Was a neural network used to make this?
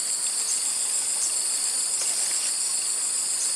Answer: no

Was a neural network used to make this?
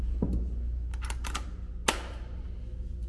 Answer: no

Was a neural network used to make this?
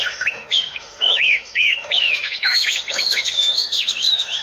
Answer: yes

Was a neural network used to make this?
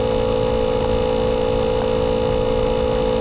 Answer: no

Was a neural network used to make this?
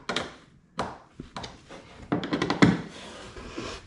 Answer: no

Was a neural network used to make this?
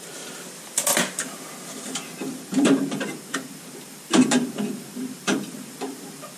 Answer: yes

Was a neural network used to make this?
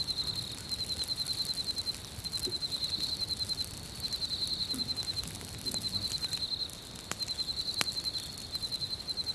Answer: no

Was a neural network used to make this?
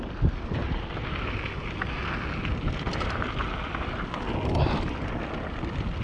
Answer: no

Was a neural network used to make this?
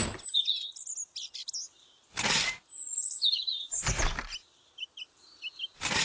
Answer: no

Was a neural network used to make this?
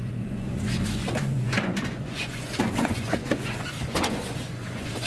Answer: yes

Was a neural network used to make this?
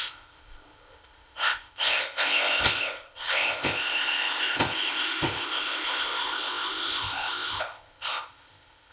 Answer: yes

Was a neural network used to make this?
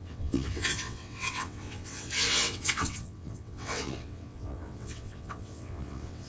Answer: yes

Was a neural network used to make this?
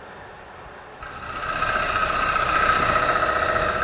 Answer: no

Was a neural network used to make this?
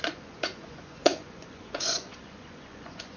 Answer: yes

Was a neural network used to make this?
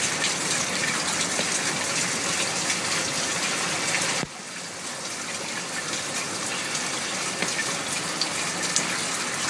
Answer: no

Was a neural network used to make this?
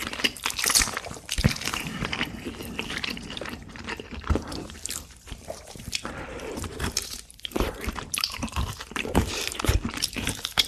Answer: yes